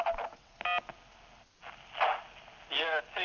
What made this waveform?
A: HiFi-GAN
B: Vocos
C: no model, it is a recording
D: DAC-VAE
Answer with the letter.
C